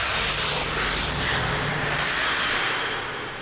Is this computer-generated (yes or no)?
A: no